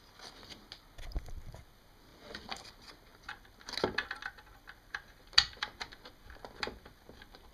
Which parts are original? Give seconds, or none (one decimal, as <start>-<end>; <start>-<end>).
0.0-2.1; 2.7-7.5